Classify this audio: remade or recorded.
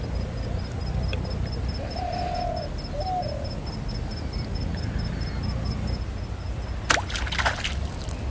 recorded